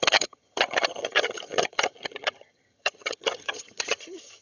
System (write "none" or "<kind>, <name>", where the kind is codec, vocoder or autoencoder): vocoder, HiFi-GAN